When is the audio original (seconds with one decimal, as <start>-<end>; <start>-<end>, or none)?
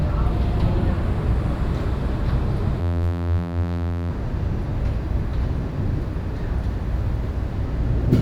0.0-2.8; 4.1-8.2